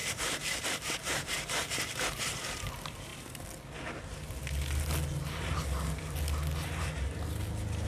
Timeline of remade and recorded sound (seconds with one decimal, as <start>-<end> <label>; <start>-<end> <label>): 0.0-3.1 remade; 3.1-7.9 recorded

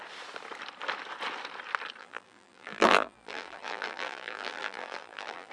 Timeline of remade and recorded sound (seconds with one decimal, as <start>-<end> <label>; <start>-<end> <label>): 0.0-2.0 recorded; 2.0-5.5 remade

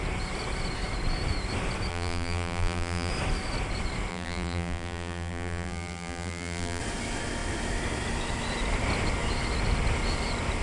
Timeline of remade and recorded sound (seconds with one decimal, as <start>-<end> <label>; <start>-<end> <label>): 0.0-1.9 recorded; 1.9-3.1 remade; 3.1-4.1 recorded; 4.1-6.8 remade; 6.8-10.6 recorded

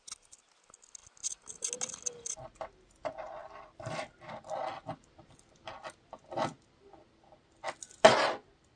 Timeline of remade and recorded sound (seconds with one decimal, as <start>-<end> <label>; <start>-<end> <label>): 0.0-8.8 recorded